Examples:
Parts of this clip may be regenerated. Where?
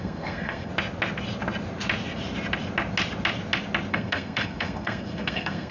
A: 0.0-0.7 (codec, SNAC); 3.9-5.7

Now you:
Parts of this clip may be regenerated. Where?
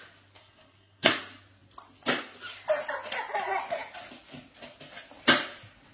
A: 0.4-1.1 (codec, SNAC)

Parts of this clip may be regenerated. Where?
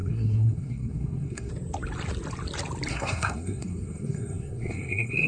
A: 0.0-1.5 (codec, SNAC); 2.9-5.3